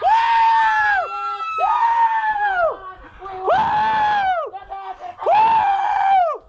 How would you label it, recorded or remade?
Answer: recorded